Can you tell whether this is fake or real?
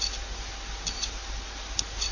real